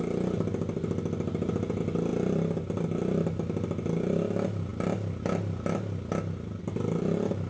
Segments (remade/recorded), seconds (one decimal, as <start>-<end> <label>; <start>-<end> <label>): 0.0-7.5 recorded